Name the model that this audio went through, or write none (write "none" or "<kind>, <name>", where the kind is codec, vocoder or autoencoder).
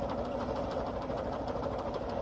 vocoder, BigVGAN v2